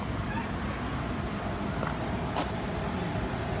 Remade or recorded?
recorded